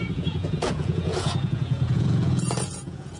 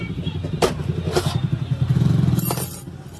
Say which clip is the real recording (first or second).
second